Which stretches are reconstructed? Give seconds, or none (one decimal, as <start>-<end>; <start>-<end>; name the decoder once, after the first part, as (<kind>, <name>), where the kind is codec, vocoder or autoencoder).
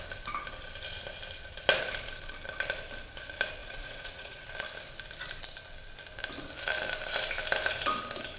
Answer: 3.6-4.5 (vocoder, Vocos)